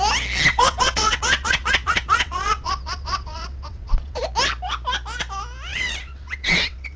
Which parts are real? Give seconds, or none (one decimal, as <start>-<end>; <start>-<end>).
0.0-0.5; 4.2-5.7